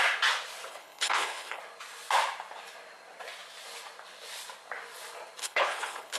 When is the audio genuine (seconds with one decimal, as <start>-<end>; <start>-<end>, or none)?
0.0-0.7; 1.6-5.4